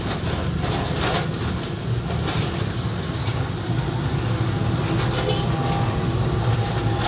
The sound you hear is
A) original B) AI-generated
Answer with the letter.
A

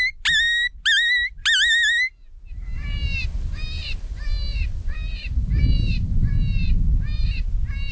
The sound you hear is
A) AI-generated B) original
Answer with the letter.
B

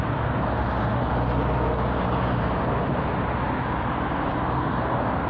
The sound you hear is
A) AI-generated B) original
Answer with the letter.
B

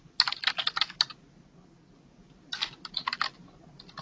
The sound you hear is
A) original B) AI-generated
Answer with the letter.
A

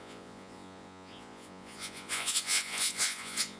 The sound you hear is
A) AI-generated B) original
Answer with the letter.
A